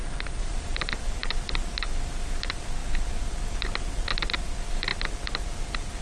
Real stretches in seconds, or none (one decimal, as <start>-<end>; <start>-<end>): 0.0-6.0